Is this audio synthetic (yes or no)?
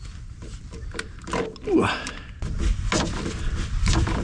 no